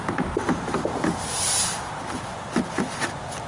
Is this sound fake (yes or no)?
no